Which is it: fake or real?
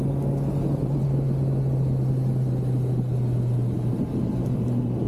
real